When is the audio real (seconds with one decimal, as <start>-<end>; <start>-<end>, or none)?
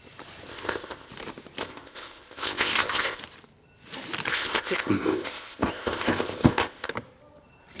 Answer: 0.0-0.5; 1.1-1.6; 3.2-4.3; 6.9-7.8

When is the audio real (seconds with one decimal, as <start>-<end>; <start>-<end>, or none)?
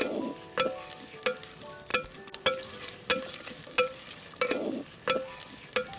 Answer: 0.0-6.0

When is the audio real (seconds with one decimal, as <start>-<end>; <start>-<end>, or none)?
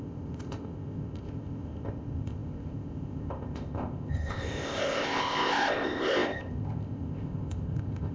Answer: none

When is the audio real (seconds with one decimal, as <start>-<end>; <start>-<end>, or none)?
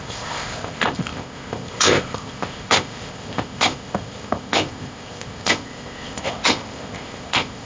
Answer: none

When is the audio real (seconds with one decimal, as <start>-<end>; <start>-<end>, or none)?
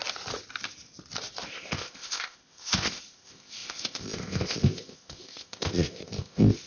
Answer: 0.0-1.5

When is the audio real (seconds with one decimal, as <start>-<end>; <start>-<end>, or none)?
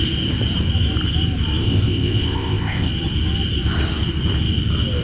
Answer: 0.0-1.6; 2.9-5.0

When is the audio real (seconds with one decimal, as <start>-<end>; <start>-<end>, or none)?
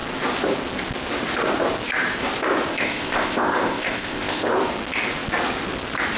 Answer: 0.0-2.7; 4.5-6.2